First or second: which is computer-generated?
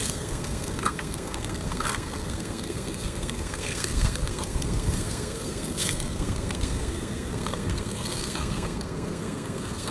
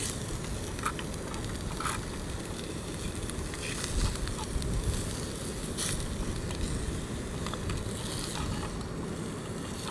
first